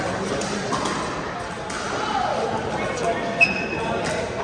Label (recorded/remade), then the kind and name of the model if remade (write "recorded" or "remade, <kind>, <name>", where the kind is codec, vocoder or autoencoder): recorded